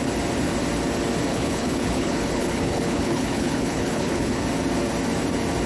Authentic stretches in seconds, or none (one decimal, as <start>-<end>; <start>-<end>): 0.0-1.3; 4.4-5.7